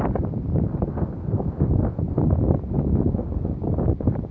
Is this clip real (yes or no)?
yes